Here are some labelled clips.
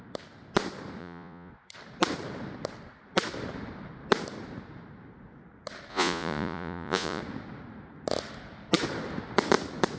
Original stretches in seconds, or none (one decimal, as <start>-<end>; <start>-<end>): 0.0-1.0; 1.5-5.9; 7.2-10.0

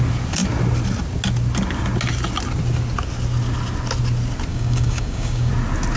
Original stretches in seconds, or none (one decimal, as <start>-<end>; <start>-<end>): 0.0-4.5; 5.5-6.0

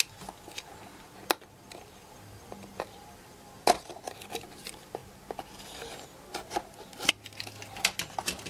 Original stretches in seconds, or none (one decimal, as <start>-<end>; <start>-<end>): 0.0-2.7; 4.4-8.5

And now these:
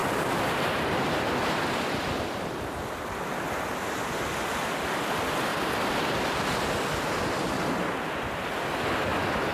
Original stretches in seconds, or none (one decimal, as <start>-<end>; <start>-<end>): 0.0-5.5; 6.7-9.5

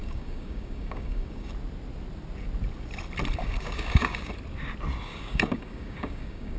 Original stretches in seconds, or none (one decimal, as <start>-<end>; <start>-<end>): 1.5-3.4; 4.3-5.1

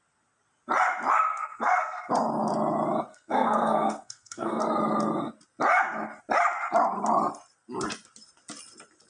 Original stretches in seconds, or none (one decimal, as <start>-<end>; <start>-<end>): 0.0-1.3; 2.1-3.1; 4.6-9.1